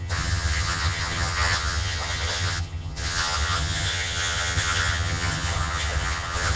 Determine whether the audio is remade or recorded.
remade